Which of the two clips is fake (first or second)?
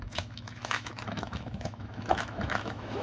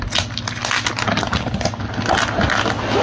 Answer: first